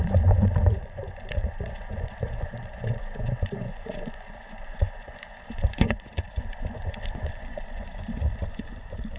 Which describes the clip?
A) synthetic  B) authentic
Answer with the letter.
A